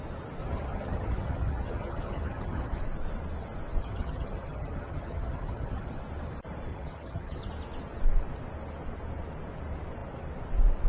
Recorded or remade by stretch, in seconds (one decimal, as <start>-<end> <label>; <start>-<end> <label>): 0.0-0.4 recorded; 0.4-2.8 remade; 2.8-3.8 recorded; 3.8-5.9 remade; 5.9-6.7 recorded; 6.7-7.5 remade; 7.5-10.9 recorded